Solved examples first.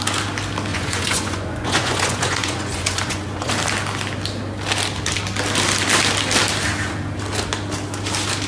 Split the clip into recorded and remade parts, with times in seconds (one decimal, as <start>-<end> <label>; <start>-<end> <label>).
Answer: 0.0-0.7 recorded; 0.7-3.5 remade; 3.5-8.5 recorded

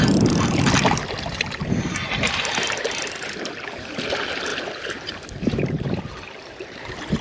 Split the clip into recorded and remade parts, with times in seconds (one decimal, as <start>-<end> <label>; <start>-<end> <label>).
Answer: 0.0-1.3 recorded; 1.3-3.0 remade; 3.0-4.5 recorded; 4.5-7.2 remade

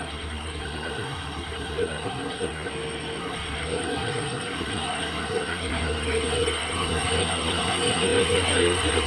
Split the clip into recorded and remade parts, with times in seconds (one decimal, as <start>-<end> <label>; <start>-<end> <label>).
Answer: 0.0-2.7 remade; 2.7-3.2 recorded; 3.2-9.1 remade

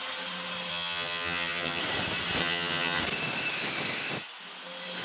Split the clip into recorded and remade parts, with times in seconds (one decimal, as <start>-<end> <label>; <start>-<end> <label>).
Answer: 0.0-0.7 recorded; 0.7-1.8 remade; 1.8-2.4 recorded; 2.4-3.0 remade; 3.0-5.0 recorded